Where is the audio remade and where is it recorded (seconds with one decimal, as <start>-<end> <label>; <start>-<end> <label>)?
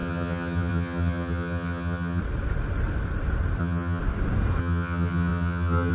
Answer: 0.0-2.2 remade; 2.2-3.6 recorded; 3.6-4.0 remade; 4.0-4.6 recorded; 4.6-5.9 remade